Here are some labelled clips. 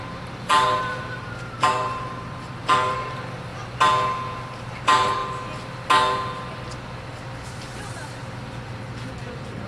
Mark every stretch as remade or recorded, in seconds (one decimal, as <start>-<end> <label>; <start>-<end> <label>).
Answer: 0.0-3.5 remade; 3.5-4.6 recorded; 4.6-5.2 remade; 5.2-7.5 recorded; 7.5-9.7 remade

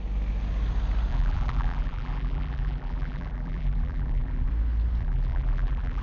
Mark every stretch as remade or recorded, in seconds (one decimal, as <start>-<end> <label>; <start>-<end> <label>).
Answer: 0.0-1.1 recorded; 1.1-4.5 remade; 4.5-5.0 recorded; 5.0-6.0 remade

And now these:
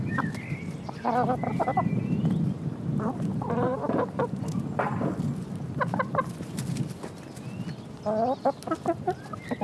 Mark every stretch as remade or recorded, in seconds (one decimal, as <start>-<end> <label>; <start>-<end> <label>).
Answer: 0.0-1.4 recorded; 1.4-6.6 remade; 6.6-9.6 recorded

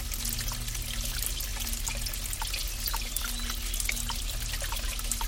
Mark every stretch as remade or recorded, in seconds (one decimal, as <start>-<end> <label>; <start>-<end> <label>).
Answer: 0.0-5.3 recorded

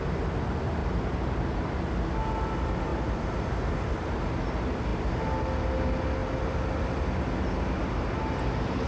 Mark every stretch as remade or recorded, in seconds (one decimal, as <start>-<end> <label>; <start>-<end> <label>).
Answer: 0.0-0.8 recorded; 0.8-1.9 remade; 1.9-2.9 recorded; 2.9-4.3 remade; 4.3-8.9 recorded

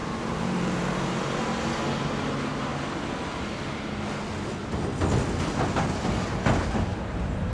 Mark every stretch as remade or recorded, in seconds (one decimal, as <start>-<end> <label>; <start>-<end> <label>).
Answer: 0.0-0.8 remade; 0.8-6.9 recorded; 6.9-7.5 remade

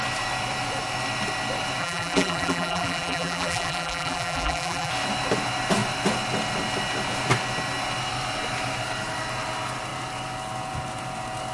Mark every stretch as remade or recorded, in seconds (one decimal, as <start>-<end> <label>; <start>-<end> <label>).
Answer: 0.0-1.8 recorded; 1.8-4.9 remade; 4.9-11.5 recorded